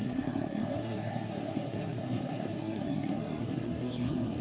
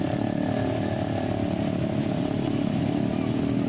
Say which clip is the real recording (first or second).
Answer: second